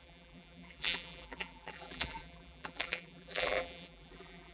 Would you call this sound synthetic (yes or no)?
yes